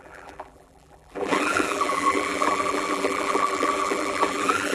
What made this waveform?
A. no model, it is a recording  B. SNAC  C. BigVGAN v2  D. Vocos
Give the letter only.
C